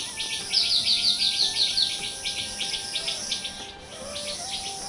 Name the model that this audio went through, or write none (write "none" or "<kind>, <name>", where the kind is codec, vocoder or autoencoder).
vocoder, BigVGAN v2